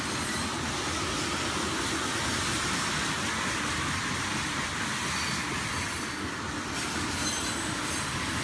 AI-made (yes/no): no